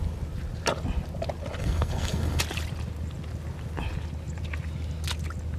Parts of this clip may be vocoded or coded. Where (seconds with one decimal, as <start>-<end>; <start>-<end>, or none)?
1.6-2.4